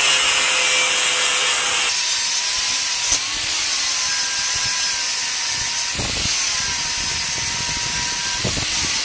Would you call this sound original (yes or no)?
yes